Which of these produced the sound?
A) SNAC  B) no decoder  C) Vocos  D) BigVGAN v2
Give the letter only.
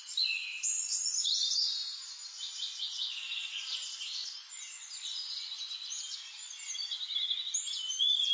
B